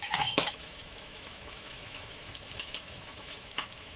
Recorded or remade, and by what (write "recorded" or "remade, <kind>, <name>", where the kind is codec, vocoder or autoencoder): remade, autoencoder, DAC-VAE